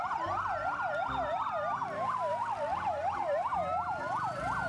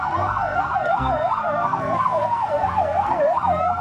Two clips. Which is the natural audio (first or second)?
first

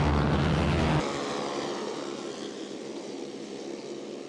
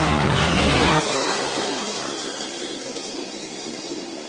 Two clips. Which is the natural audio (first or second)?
first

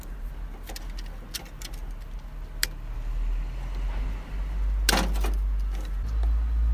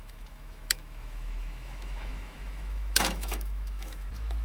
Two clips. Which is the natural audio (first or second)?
first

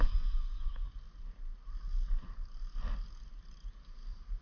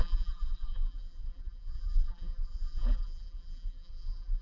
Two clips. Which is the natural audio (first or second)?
first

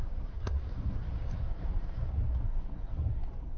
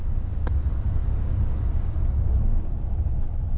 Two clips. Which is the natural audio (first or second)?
second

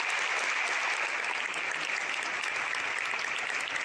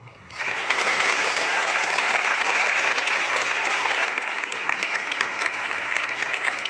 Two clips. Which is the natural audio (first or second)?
first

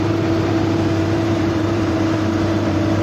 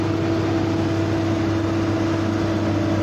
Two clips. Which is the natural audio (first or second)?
second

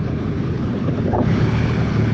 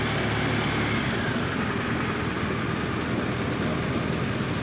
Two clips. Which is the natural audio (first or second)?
second